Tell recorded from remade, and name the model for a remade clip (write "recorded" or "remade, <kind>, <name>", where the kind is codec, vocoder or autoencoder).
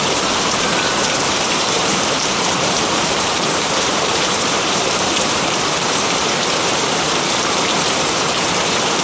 remade, vocoder, BigVGAN v2